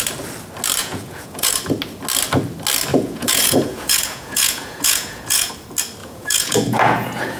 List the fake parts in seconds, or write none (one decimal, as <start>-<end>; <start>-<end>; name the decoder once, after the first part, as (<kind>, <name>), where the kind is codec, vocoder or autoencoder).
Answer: 0.8-1.5 (vocoder, Vocos); 2.9-5.5; 6.0-7.4

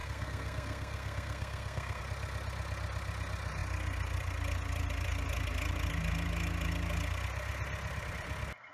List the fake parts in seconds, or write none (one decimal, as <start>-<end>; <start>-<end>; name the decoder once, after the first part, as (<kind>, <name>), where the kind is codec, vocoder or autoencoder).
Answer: 0.0-2.0 (codec, SNAC)

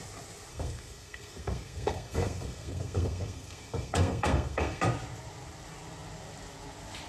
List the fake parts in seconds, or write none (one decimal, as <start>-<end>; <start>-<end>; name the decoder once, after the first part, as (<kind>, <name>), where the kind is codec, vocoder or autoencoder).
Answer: 0.5-4.8 (codec, SNAC)

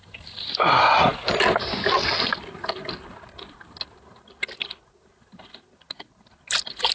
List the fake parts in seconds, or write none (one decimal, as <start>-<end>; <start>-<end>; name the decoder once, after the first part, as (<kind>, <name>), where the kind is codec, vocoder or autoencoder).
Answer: none

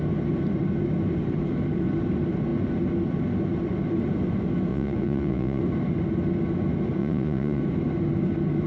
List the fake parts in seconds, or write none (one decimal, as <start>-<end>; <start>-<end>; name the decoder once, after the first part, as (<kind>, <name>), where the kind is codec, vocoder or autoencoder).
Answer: 4.7-5.6 (vocoder, Vocos); 7.0-7.6